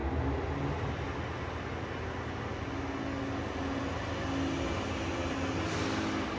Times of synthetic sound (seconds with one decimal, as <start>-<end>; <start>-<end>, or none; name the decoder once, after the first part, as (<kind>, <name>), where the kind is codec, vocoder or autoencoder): none